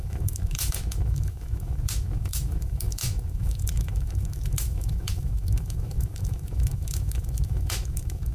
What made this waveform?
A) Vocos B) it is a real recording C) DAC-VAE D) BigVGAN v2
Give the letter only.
C